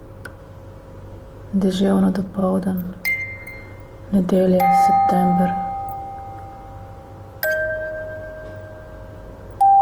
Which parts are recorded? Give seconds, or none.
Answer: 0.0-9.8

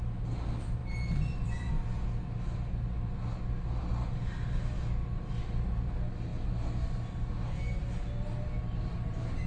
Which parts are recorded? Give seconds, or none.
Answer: 0.0-0.8; 1.7-9.5

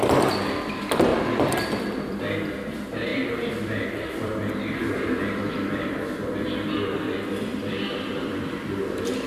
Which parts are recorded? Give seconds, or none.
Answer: 0.0-1.1; 2.2-3.1; 6.3-7.5; 8.8-9.3

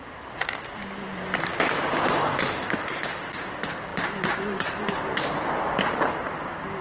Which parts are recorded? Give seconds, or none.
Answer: 1.5-2.1

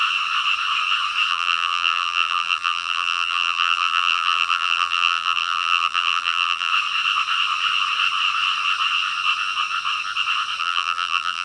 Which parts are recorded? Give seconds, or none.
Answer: 0.0-1.3; 6.7-10.6

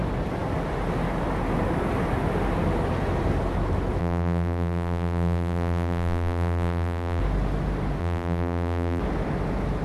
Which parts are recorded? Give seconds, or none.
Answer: 0.0-4.0; 7.2-8.0; 9.0-9.8

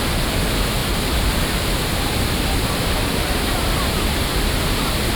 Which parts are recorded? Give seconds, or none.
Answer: none